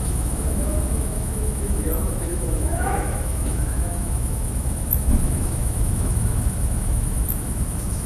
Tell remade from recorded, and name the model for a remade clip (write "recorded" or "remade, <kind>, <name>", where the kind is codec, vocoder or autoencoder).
remade, autoencoder, DAC-VAE